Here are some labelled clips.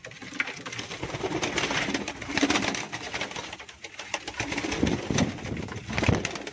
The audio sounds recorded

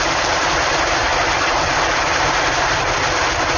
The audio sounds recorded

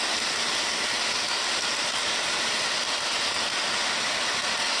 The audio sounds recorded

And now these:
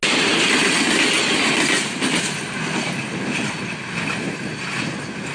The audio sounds recorded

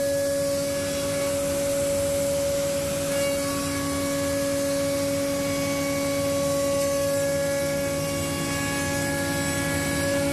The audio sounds recorded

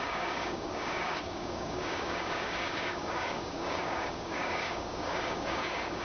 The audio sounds remade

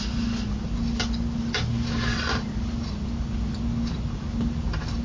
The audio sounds recorded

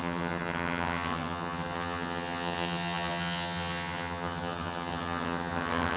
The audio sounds remade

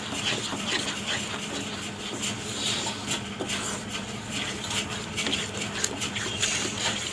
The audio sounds recorded